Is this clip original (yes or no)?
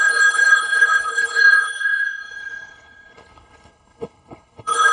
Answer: no